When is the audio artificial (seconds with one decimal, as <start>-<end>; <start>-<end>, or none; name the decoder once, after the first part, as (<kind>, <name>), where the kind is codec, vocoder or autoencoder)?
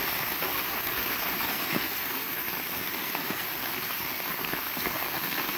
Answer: 0.0-5.6 (codec, SNAC)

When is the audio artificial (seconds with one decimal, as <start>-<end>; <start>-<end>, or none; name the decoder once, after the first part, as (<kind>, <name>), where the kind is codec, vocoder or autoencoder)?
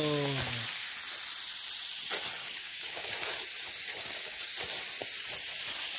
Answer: 2.4-3.1 (codec, DAC); 3.9-4.4